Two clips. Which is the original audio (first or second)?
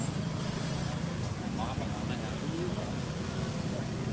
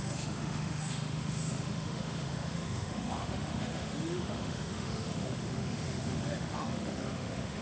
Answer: first